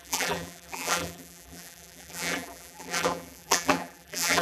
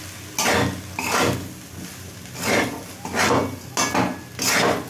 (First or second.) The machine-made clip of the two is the first